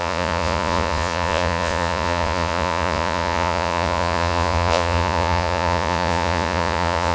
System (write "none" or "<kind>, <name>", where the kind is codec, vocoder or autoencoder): vocoder, Vocos